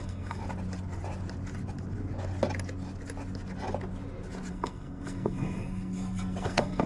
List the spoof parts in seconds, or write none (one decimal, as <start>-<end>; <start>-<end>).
0.0-0.4; 4.5-6.9